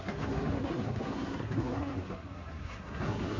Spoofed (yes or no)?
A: yes